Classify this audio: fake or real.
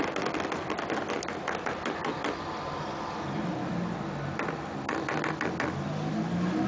real